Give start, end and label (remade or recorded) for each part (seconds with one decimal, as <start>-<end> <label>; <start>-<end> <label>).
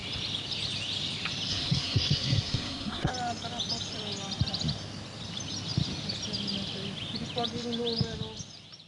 0.0-1.5 recorded; 1.5-3.1 remade; 3.1-8.9 recorded